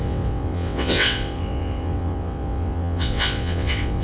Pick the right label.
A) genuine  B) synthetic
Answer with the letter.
B